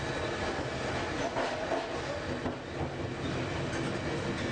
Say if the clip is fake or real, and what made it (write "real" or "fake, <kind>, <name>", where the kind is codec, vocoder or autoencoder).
real